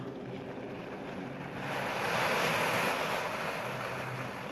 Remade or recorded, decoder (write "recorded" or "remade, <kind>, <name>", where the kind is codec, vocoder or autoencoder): recorded